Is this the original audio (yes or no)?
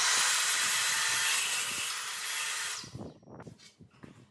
yes